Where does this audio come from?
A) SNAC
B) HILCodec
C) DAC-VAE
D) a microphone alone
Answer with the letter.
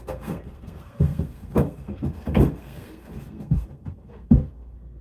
A